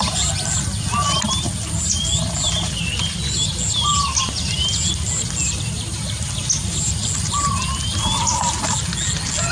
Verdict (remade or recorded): recorded